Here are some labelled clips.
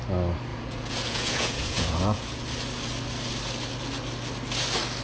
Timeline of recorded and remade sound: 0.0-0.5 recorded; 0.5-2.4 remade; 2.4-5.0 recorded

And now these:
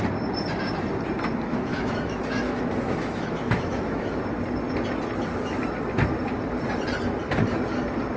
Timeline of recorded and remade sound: 0.0-1.5 recorded; 1.5-4.2 remade; 4.2-8.2 recorded

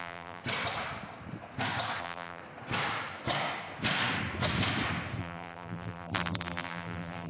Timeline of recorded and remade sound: 0.0-0.4 remade; 0.4-2.0 recorded; 2.0-2.4 remade; 2.4-5.2 recorded; 5.2-7.3 remade

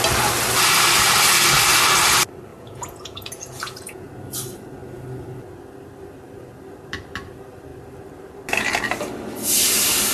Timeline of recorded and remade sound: 0.0-2.5 recorded; 2.5-4.1 remade; 4.1-10.1 recorded